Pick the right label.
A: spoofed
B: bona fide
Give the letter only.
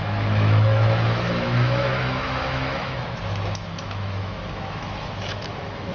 A